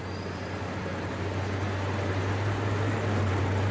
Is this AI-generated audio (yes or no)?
no